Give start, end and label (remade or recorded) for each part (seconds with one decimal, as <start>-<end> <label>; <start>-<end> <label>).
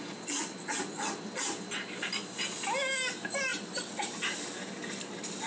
0.0-5.5 recorded